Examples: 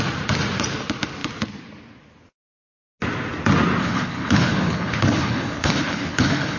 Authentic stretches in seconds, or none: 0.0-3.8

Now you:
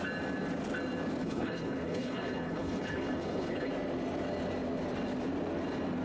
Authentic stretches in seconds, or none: 0.0-1.2; 3.7-6.0

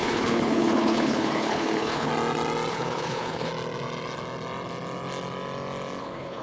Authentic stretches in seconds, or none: 2.1-2.7; 3.5-6.0

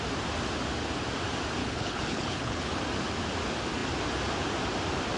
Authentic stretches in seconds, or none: 0.0-1.6; 2.8-5.2

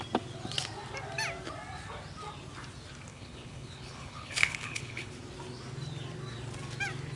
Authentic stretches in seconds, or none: 0.0-3.1; 5.1-7.2

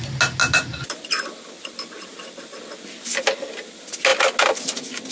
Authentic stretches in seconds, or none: 0.0-5.1

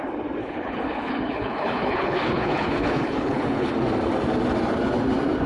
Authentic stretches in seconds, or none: 0.0-0.4; 3.7-5.5